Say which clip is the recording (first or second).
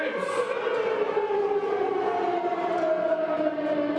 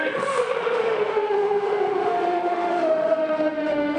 first